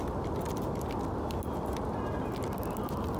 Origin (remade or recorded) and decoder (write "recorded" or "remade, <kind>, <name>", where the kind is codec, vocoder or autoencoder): recorded